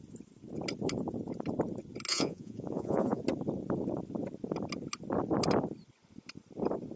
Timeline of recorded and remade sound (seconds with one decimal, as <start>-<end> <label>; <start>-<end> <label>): 0.0-2.1 recorded; 2.1-3.2 remade; 3.2-7.0 recorded